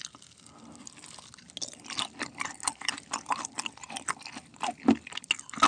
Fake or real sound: real